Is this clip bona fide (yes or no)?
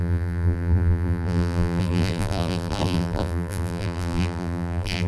no